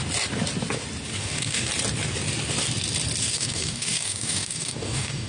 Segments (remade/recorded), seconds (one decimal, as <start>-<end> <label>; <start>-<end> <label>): 0.0-1.2 recorded; 1.2-1.7 remade; 1.7-3.2 recorded; 3.2-5.3 remade

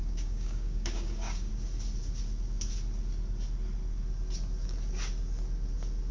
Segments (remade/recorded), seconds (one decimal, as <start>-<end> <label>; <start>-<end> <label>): 0.0-1.5 remade; 1.5-6.1 recorded

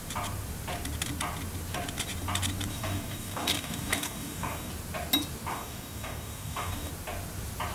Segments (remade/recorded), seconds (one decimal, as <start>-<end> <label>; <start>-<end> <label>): 0.0-2.7 recorded; 2.7-4.7 remade; 4.7-5.5 recorded; 5.5-6.9 remade; 6.9-7.7 recorded

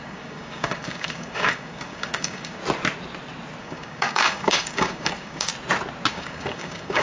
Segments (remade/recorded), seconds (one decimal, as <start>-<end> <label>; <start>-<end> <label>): 0.0-2.6 remade; 2.6-3.6 recorded; 3.6-5.5 remade; 5.5-6.1 recorded; 6.1-7.0 remade

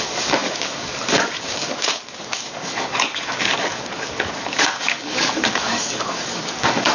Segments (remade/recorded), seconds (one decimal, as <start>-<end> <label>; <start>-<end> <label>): 0.0-6.9 remade

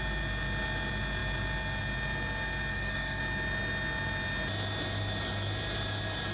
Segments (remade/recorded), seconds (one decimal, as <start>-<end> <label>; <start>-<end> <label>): 0.0-2.7 recorded; 2.7-3.2 remade; 3.2-6.3 recorded